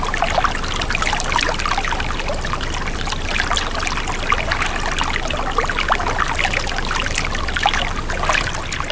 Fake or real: real